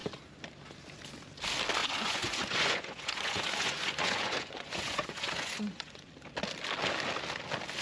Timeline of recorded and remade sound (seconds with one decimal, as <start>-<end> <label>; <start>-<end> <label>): 0.0-1.8 recorded; 1.8-6.1 remade; 6.1-7.8 recorded